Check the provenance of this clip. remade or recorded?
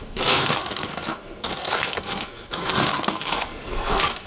remade